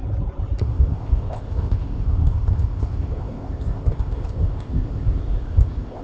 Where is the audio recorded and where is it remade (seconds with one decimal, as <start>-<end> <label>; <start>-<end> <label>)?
0.0-0.6 recorded; 0.6-6.0 remade

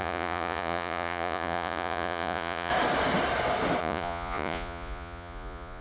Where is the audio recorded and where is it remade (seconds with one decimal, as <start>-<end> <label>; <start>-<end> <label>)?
0.0-2.7 remade; 2.7-3.8 recorded; 3.8-5.8 remade

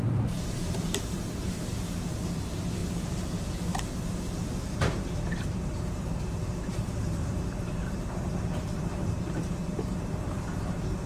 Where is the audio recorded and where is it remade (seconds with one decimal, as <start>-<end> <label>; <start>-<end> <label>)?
0.0-11.1 remade